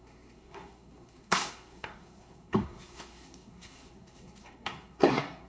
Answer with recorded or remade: remade